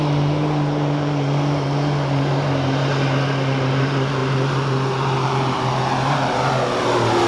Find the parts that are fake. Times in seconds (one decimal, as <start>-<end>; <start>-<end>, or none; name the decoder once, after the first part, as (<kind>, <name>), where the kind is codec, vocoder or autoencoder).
none